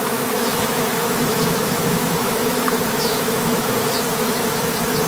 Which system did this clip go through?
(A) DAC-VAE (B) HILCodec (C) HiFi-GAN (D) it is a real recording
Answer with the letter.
A